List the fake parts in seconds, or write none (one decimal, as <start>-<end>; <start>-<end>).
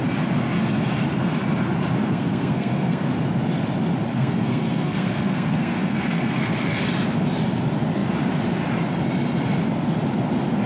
1.9-3.1; 4.1-6.8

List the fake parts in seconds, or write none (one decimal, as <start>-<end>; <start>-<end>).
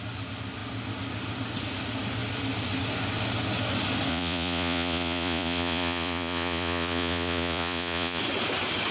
4.1-8.2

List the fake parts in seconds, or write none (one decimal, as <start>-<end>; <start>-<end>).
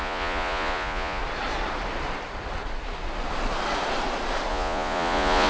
0.0-1.2; 4.5-5.5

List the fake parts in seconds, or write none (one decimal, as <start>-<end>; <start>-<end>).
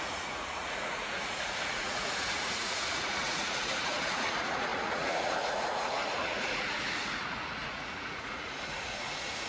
0.0-9.5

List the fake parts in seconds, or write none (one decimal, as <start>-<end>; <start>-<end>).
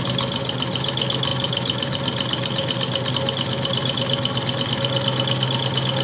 none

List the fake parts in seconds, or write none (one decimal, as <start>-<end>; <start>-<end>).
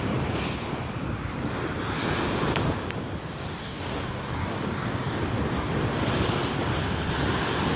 3.6-5.4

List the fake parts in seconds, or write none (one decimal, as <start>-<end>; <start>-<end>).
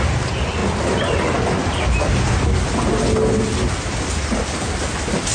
none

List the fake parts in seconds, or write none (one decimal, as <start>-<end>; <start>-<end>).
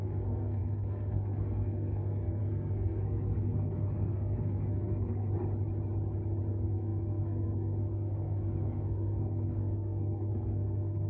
0.0-5.3; 6.5-11.1